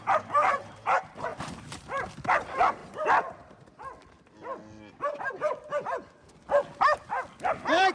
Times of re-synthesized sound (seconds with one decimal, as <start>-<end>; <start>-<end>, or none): 0.0-2.8; 7.5-7.9